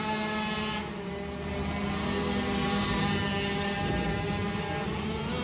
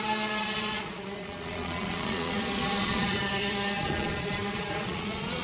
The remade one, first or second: second